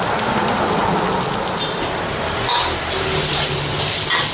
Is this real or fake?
real